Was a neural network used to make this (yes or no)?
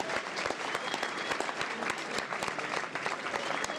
yes